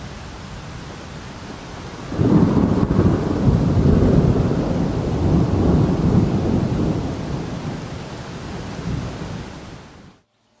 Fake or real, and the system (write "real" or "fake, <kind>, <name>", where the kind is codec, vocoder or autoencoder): real